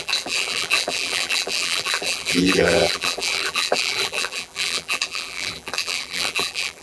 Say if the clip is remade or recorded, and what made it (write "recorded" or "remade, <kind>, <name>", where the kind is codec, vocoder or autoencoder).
remade, vocoder, BigVGAN v2